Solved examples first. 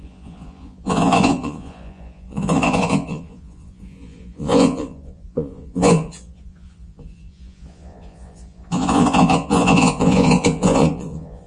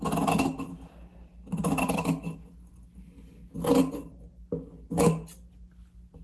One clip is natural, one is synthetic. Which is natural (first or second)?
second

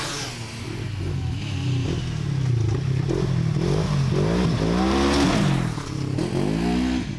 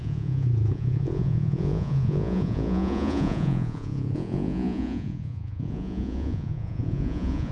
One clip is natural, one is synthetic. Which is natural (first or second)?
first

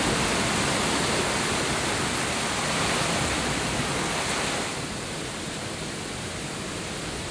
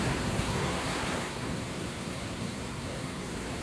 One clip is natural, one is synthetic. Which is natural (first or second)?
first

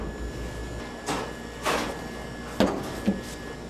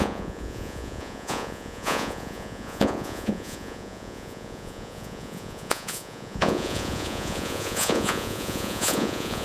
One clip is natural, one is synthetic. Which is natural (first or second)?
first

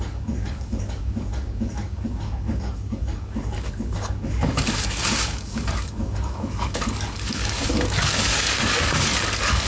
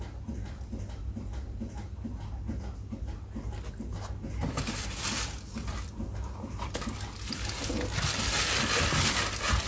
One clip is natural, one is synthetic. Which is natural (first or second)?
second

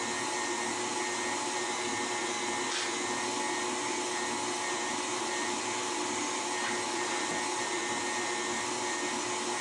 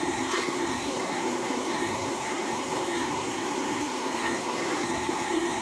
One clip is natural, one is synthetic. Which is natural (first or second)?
first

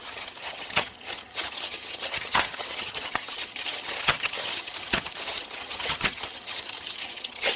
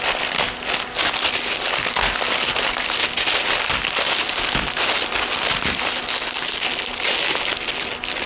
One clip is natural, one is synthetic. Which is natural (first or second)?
second